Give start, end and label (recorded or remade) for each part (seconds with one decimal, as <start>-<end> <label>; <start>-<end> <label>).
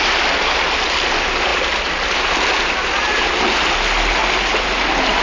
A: 0.0-5.2 recorded